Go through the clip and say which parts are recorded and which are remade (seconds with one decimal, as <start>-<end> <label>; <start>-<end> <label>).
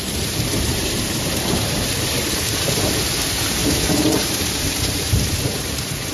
0.0-2.9 remade; 2.9-3.6 recorded; 3.6-6.1 remade